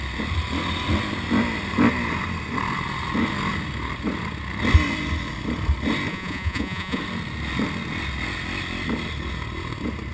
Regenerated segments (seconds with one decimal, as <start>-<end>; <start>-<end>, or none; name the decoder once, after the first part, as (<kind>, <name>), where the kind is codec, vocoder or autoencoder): 6.1-7.0 (vocoder, Vocos)